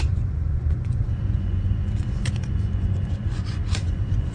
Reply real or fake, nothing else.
fake